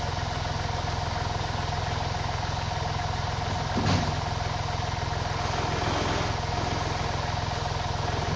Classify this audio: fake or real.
real